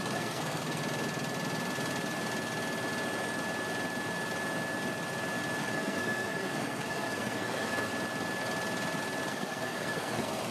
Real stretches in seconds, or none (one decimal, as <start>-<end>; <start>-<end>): 0.8-5.6; 7.9-9.3